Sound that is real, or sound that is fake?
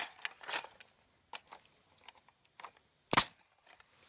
real